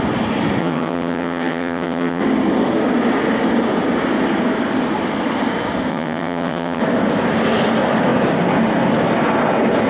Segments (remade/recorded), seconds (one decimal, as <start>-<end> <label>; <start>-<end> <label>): 0.0-0.6 recorded; 0.6-2.2 remade; 2.2-5.9 recorded; 5.9-6.8 remade; 6.8-9.9 recorded

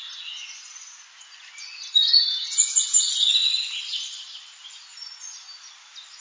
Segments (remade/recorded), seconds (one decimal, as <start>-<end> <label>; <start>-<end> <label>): 0.0-6.2 recorded

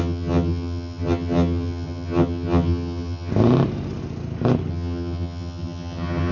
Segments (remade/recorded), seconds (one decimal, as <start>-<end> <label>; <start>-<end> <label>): 0.0-3.3 remade; 3.3-4.7 recorded; 4.7-6.3 remade

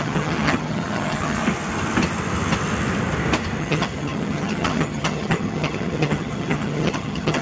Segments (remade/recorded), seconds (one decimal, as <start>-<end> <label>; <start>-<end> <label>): 0.0-1.4 remade; 1.4-3.6 recorded; 3.6-7.4 remade

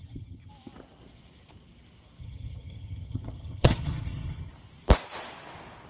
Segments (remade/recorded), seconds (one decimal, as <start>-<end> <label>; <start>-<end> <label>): 0.0-0.5 remade; 0.5-2.2 recorded; 2.2-4.5 remade; 4.5-5.9 recorded

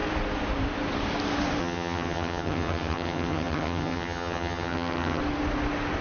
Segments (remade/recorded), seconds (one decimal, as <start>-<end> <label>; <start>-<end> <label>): 0.0-1.6 recorded; 1.6-5.2 remade; 5.2-6.0 recorded

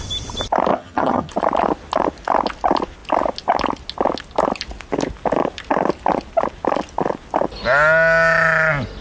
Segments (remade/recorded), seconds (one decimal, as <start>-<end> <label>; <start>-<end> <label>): 0.0-0.7 recorded; 0.7-1.3 remade; 1.3-9.0 recorded

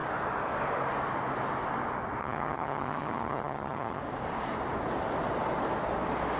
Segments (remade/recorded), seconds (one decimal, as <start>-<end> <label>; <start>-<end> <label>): 0.0-2.2 recorded; 2.2-4.0 remade; 4.0-6.4 recorded